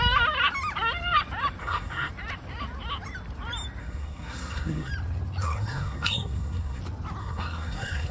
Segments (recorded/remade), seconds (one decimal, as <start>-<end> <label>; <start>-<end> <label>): 0.0-1.6 recorded; 1.6-2.1 remade; 2.1-3.8 recorded; 3.8-4.9 remade; 4.9-5.4 recorded; 5.4-6.8 remade; 6.8-7.2 recorded; 7.2-8.1 remade